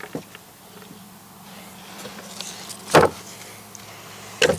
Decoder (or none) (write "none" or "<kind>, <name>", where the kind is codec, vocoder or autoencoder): none